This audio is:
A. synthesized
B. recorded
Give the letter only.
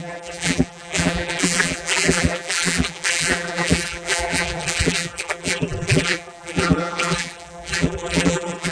A